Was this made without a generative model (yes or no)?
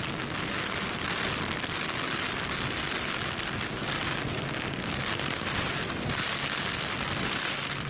yes